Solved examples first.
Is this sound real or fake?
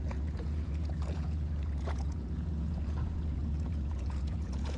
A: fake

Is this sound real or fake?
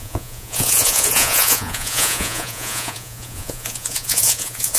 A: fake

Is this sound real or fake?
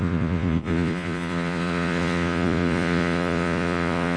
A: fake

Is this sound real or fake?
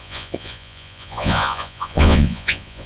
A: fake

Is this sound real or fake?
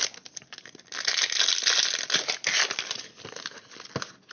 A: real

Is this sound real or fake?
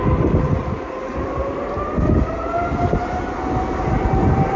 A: real